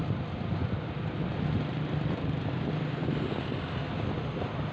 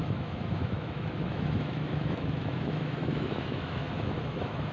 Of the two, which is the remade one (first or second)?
second